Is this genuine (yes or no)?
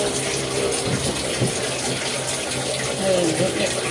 yes